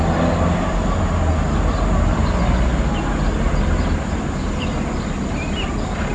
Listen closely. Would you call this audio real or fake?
real